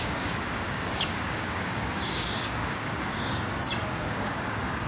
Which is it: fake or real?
fake